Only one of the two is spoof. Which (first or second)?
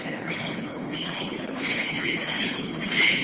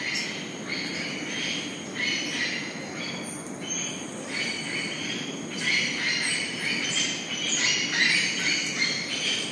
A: first